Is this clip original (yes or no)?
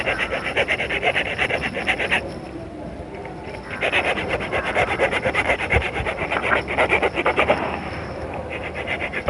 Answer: no